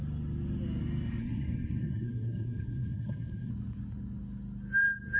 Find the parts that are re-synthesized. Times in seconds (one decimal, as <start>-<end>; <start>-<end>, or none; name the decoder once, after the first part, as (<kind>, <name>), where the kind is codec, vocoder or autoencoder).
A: 1.2-3.5 (codec, SNAC)